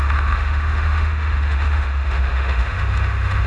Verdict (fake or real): fake